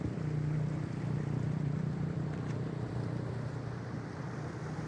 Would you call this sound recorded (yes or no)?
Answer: no